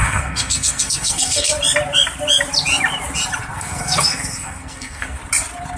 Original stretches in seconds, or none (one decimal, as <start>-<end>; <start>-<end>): 1.5-3.5; 5.2-5.8